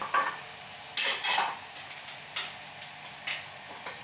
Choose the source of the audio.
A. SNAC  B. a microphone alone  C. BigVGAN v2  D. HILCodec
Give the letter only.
B